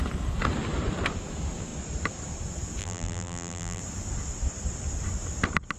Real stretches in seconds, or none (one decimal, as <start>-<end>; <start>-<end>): 0.0-2.8; 3.8-5.8